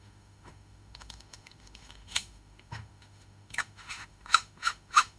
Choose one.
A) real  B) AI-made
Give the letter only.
B